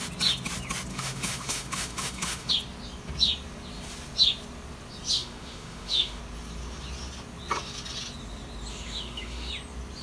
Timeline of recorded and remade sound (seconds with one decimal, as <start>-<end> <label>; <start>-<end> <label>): 0.0-0.9 recorded; 0.9-2.5 remade; 2.5-5.2 recorded; 5.2-6.2 remade; 6.2-8.7 recorded; 8.7-9.5 remade; 9.5-10.0 recorded